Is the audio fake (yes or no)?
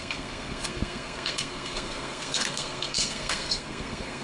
yes